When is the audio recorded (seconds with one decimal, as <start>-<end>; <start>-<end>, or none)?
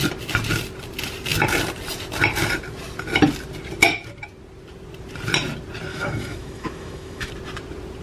0.0-5.9; 7.3-8.0